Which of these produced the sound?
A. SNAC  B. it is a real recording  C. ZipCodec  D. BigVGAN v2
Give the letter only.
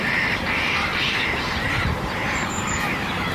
D